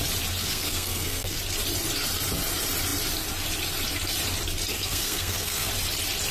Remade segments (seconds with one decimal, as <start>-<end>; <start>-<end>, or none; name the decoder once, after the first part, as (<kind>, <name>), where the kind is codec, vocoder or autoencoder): 0.4-1.4 (codec, SNAC); 4.7-5.7